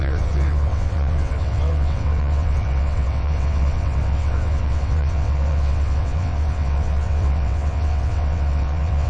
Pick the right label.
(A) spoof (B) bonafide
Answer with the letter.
A